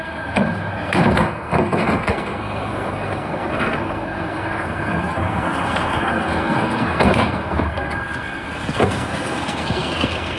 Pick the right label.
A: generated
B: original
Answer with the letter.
A